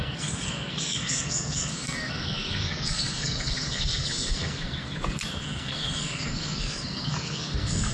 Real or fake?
fake